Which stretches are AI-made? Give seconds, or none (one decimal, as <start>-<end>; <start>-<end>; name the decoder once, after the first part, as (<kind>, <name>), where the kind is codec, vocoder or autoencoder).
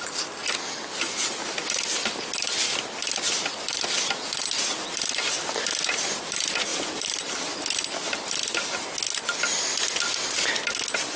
none